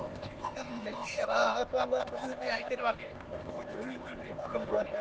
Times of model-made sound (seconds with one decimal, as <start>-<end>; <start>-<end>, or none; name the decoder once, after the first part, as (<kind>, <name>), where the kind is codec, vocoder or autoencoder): 0.0-5.0 (codec, ZipCodec)